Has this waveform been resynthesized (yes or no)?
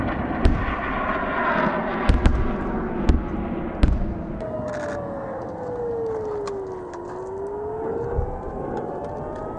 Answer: no